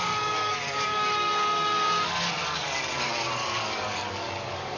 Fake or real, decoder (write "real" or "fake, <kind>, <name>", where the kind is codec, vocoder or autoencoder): fake, codec, DAC